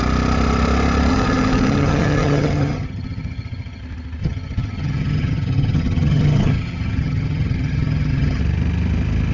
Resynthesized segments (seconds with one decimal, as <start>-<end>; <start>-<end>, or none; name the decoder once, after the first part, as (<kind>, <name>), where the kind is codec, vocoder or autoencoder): 1.1-3.8 (vocoder, HiFi-GAN); 4.2-8.4